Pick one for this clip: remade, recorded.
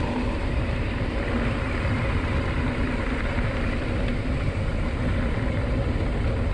recorded